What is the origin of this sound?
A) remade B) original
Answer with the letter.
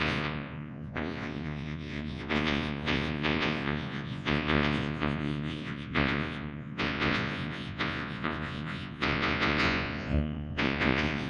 A